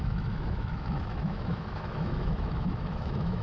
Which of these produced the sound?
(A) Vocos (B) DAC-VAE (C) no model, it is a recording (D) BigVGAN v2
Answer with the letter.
B